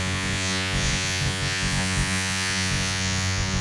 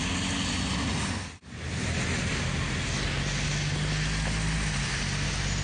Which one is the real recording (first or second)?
second